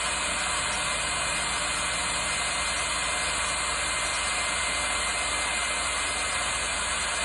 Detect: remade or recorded recorded